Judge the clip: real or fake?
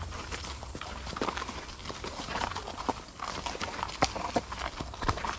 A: real